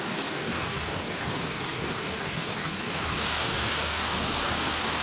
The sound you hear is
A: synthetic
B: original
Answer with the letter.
A